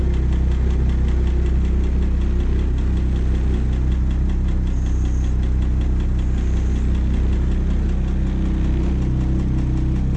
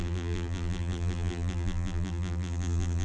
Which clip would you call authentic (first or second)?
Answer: first